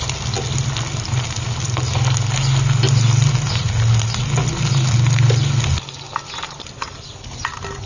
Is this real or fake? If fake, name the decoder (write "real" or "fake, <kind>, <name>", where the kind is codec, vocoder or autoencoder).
real